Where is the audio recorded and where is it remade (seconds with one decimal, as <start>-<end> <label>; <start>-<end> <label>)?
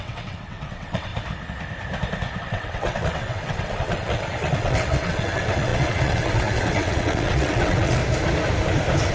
0.0-1.1 remade; 1.1-2.4 recorded; 2.4-8.0 remade; 8.0-9.1 recorded